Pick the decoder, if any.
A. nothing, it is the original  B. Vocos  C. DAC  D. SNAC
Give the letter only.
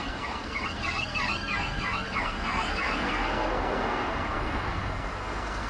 D